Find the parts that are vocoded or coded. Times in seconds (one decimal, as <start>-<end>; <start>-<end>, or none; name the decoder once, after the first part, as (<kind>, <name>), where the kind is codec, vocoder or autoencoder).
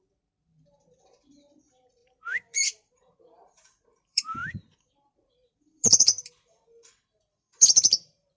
0.0-8.4 (vocoder, BigVGAN v2)